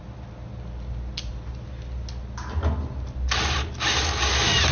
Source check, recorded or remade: recorded